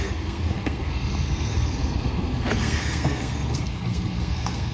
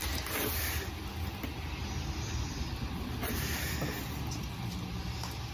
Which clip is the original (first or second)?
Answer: second